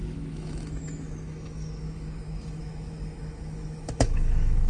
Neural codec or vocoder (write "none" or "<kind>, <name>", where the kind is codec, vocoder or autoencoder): autoencoder, DAC-VAE